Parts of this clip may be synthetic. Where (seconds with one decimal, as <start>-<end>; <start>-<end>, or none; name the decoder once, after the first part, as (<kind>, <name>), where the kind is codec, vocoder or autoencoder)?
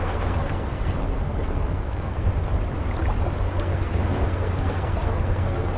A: 0.0-2.3 (codec, SNAC); 3.4-5.8